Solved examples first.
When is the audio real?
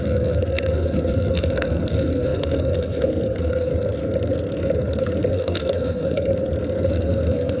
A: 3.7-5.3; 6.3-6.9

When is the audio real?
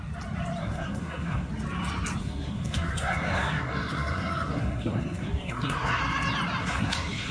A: 0.0-0.6; 1.5-2.2; 6.0-6.6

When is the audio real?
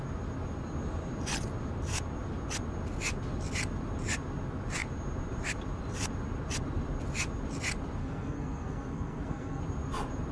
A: 0.0-8.0; 9.6-10.3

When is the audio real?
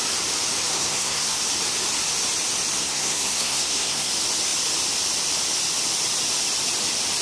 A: 0.0-0.7; 1.4-2.8; 4.1-7.2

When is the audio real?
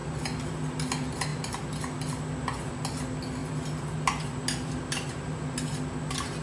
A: 0.0-6.4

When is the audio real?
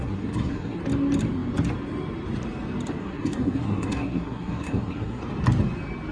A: 0.8-3.0; 5.2-6.1